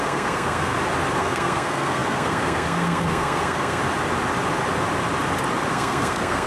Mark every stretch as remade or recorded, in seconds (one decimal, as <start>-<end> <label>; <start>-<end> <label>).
0.0-0.7 remade; 0.7-1.2 recorded; 1.2-3.8 remade; 3.8-5.7 recorded; 5.7-6.5 remade